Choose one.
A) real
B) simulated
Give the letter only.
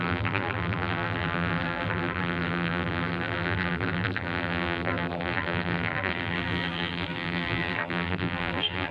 B